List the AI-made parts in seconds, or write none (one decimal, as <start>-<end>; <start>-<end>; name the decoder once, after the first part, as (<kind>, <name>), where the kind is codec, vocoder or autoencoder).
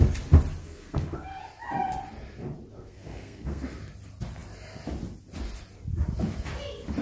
0.6-1.4 (codec, SNAC); 2.7-3.8